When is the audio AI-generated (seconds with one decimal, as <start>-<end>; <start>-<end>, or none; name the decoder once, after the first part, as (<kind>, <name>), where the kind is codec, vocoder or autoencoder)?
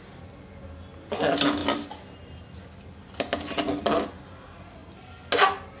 none